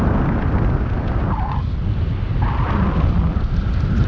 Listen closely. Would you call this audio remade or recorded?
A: recorded